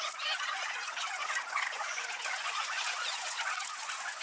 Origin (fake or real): fake